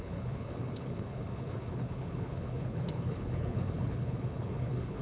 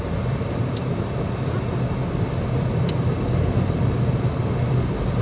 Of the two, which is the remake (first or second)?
first